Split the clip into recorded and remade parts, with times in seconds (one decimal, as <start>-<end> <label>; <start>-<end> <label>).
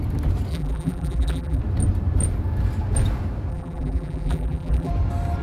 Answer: 0.0-0.5 recorded; 0.5-1.6 remade; 1.6-3.5 recorded; 3.5-4.9 remade; 4.9-5.4 recorded